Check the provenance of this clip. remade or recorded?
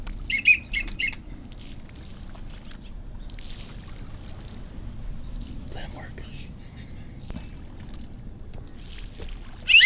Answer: recorded